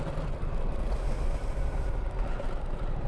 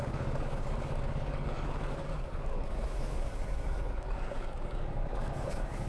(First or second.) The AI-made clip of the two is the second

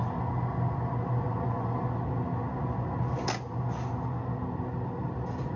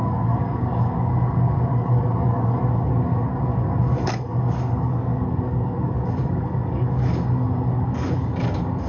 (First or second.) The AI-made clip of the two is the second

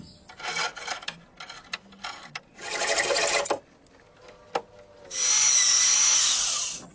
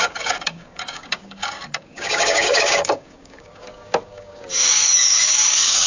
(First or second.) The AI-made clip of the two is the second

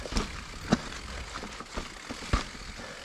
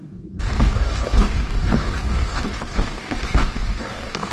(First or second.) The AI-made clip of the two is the second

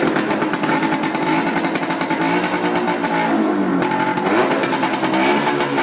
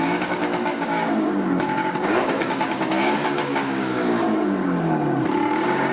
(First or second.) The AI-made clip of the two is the second